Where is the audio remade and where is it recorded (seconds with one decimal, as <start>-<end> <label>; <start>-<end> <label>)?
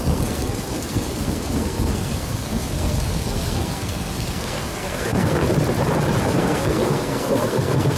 0.0-5.4 remade; 5.4-6.2 recorded; 6.2-8.0 remade